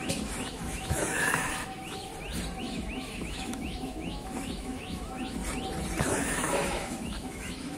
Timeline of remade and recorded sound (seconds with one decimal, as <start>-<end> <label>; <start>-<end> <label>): 0.0-2.1 remade; 2.1-2.6 recorded; 2.6-5.4 remade; 5.4-6.0 recorded; 6.0-7.8 remade